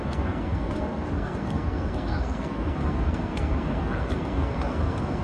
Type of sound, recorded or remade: remade